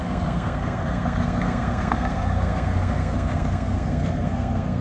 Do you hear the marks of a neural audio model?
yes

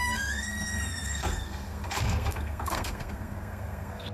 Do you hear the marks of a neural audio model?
yes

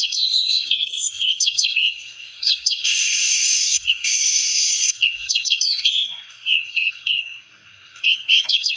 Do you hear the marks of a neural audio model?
yes